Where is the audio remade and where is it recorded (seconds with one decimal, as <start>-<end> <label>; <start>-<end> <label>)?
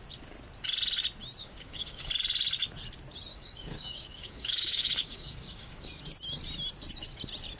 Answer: 0.0-1.4 recorded; 1.4-2.1 remade; 2.1-3.3 recorded; 3.3-6.0 remade; 6.0-7.6 recorded